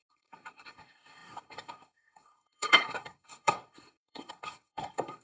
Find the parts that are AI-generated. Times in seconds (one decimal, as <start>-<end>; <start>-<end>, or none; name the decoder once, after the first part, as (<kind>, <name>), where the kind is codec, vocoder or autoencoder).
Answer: 0.0-5.2 (codec, SNAC)